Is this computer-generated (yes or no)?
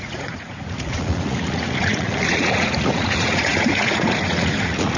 yes